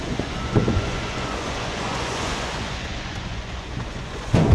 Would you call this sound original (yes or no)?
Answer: no